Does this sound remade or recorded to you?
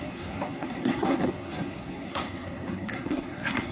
remade